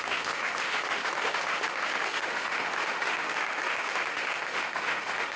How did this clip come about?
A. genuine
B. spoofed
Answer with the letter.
B